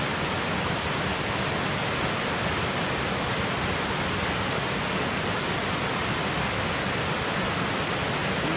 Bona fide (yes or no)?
yes